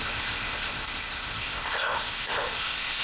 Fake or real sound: fake